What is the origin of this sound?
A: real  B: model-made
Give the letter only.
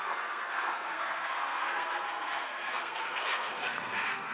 B